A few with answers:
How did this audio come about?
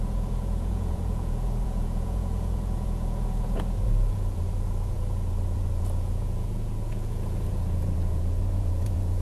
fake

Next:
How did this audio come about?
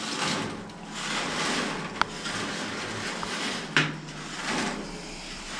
real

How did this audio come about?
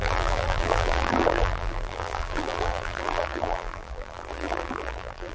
fake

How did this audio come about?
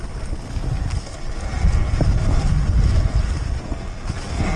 real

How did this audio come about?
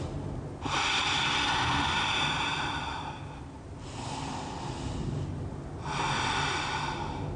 real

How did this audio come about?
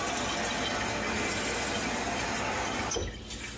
real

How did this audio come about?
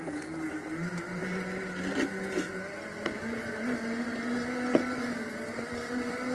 real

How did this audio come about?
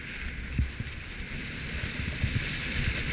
fake